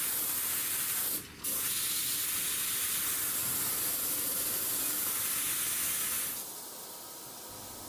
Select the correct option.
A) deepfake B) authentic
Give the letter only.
B